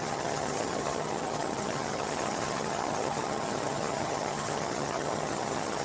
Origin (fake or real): fake